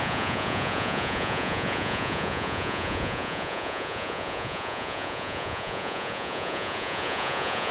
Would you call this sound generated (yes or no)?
yes